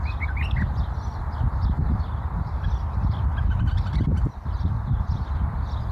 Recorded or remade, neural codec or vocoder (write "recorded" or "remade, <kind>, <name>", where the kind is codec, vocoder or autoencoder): recorded